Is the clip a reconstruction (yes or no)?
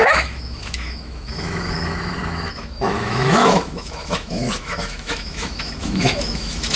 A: yes